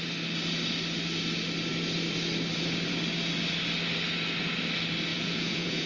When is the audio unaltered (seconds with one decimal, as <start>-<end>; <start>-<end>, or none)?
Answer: 0.0-5.1